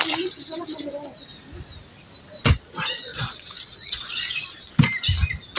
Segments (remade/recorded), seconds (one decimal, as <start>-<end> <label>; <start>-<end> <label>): 0.0-3.1 recorded; 3.1-4.7 remade; 4.7-5.6 recorded